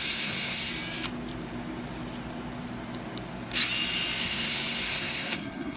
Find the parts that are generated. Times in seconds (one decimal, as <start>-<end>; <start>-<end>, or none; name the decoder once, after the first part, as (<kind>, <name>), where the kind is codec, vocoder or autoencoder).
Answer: 0.0-0.7 (codec, SNAC); 4.2-5.8